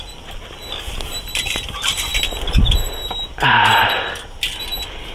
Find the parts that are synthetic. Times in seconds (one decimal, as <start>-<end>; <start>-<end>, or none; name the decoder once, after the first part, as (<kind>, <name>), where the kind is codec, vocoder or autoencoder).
none